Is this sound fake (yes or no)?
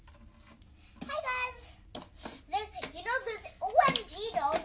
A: no